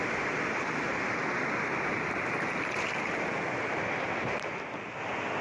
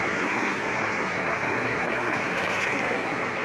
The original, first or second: first